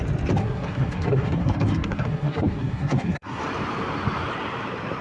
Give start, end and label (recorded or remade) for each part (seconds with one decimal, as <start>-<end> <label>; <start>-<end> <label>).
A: 0.0-0.4 recorded; 0.4-3.4 remade; 3.4-5.0 recorded